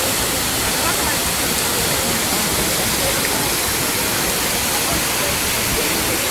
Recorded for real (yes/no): yes